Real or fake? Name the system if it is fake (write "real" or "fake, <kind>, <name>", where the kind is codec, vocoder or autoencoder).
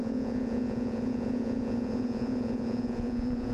fake, vocoder, Vocos